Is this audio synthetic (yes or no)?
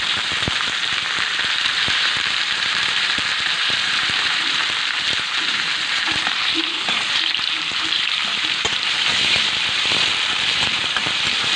yes